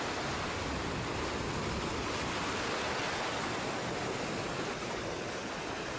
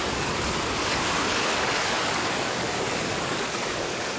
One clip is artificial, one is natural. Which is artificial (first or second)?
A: second